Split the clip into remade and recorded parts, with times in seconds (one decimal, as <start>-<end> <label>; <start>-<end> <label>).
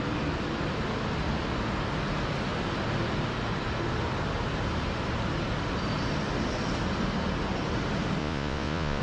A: 0.0-8.2 recorded; 8.2-9.0 remade